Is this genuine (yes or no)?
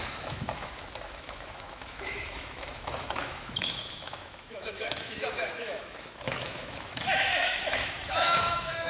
no